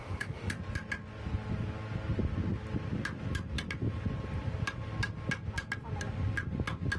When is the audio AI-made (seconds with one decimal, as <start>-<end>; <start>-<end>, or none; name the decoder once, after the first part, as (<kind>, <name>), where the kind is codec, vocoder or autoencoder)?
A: 0.0-0.5 (autoencoder, DAC-VAE)